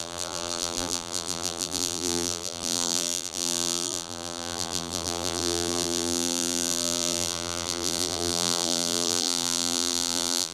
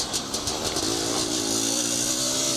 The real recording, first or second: second